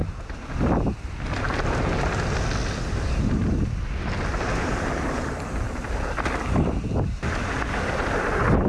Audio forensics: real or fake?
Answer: real